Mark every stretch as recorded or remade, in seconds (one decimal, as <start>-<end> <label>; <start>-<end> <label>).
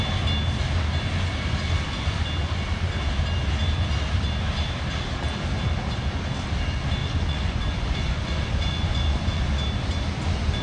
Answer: 0.0-7.0 recorded; 7.0-9.4 remade; 9.4-10.6 recorded